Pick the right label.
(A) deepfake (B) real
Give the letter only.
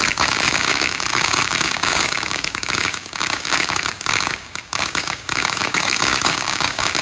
A